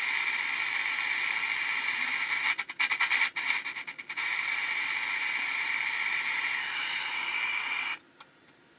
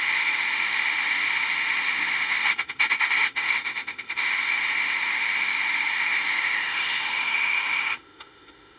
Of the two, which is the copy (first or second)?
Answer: second